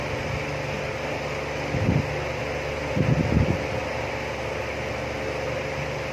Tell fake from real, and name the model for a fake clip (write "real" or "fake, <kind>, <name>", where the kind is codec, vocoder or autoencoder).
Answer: real